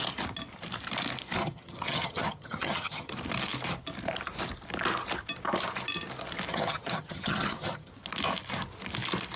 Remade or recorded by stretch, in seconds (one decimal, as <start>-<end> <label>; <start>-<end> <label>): 0.0-1.4 recorded; 1.4-3.1 remade; 3.1-6.5 recorded; 6.5-7.9 remade; 7.9-9.4 recorded